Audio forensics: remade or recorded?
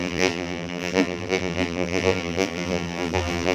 remade